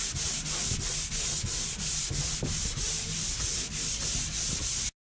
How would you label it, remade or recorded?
recorded